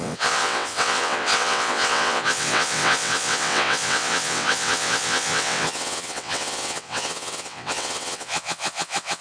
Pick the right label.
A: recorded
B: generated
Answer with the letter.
B